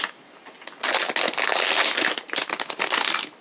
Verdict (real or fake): real